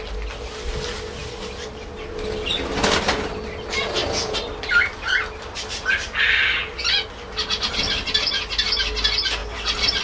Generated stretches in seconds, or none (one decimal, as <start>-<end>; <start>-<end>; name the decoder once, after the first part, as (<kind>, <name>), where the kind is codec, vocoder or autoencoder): 1.2-1.9 (vocoder, BigVGAN v2)

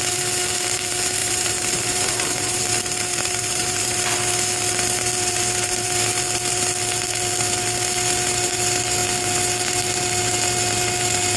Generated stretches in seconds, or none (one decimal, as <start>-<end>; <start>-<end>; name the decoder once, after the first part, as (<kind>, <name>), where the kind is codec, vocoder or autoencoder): 1.2-2.6 (vocoder, BigVGAN v2); 3.1-4.0

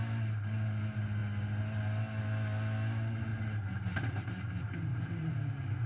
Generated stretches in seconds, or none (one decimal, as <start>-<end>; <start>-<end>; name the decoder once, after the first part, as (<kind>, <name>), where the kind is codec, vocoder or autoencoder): 4.9-5.4 (vocoder, BigVGAN v2)

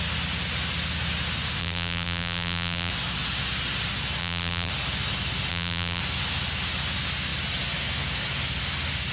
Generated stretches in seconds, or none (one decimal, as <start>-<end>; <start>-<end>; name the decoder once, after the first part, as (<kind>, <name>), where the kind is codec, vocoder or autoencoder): 1.6-2.9 (vocoder, BigVGAN v2); 4.2-4.7; 5.5-6.0

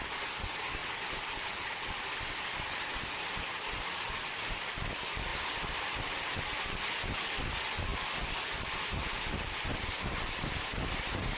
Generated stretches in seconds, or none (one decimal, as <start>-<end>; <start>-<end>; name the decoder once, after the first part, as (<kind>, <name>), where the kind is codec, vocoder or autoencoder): 0.8-2.4 (vocoder, BigVGAN v2); 5.3-6.4; 7.9-10.5

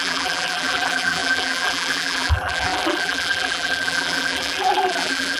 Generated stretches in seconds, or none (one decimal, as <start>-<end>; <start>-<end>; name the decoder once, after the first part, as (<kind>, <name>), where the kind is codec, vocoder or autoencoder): 0.0-5.4 (vocoder, BigVGAN v2)

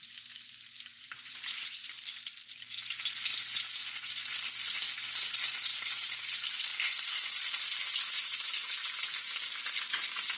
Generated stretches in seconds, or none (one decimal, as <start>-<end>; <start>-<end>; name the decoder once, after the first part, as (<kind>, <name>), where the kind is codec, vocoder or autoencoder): 0.9-3.0 (vocoder, BigVGAN v2); 5.7-6.2; 6.7-10.4